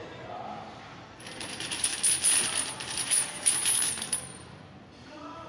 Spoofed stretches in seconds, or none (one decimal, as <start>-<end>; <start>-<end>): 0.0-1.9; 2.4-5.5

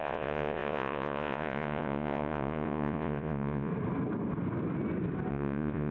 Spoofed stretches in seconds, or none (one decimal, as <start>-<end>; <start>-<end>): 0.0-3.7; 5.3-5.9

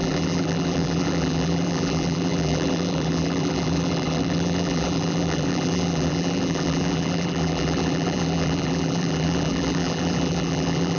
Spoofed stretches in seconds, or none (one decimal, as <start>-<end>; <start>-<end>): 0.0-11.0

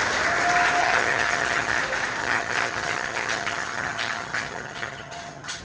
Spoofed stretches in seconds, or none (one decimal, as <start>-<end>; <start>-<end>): 0.8-1.8; 2.2-5.6